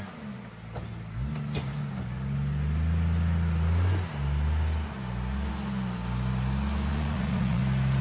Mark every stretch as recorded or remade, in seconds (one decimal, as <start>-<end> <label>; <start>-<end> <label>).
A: 0.0-6.9 recorded; 6.9-7.6 remade; 7.6-8.0 recorded